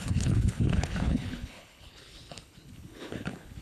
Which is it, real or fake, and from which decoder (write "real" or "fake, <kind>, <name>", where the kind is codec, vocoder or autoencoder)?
fake, codec, HILCodec